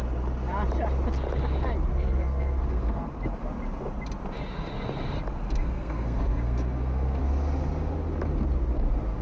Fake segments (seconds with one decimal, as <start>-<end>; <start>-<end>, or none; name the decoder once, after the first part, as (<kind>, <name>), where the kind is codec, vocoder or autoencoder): 1.9-3.0 (codec, SNAC); 5.6-7.2